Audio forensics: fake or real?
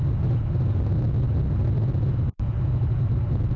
real